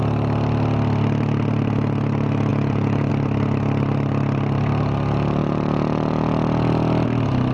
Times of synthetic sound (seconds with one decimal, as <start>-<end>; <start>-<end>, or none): 2.5-3.1; 5.4-6.7

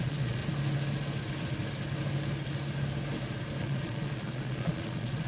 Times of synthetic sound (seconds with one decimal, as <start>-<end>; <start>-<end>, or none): 0.0-0.4; 3.6-5.3

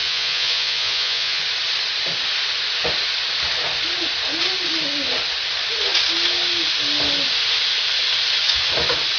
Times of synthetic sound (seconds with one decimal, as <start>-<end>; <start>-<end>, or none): 0.0-1.4